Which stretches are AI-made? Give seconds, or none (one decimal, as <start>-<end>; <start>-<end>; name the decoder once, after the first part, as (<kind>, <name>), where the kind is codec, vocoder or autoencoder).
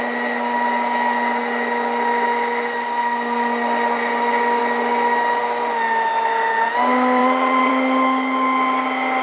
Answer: 7.2-7.7 (vocoder, WaveNeXt)